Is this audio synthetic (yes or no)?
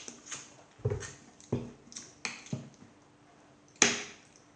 no